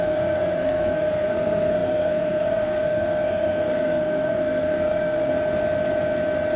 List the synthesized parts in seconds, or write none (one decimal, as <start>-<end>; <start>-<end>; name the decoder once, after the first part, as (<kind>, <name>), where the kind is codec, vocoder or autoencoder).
0.0-5.3 (codec, SNAC)